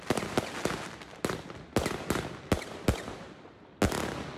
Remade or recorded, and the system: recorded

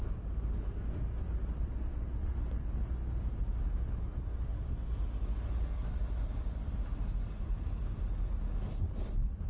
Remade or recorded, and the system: recorded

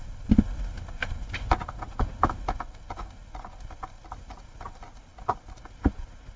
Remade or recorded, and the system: recorded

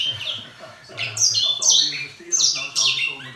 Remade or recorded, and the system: remade, vocoder, BigVGAN v2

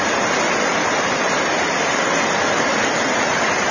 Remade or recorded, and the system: recorded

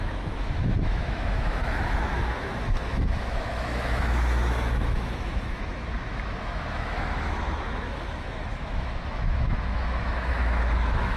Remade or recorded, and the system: remade, autoencoder, DAC-VAE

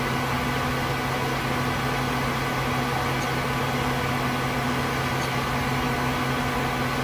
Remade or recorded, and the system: recorded